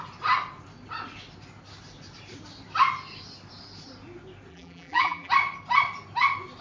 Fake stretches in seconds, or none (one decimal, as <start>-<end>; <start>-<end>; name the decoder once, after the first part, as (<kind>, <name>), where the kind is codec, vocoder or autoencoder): 4.5-5.3 (vocoder, BigVGAN v2)